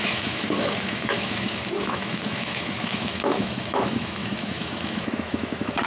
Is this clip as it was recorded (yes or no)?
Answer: no